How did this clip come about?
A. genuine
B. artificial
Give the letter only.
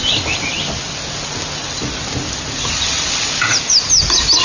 A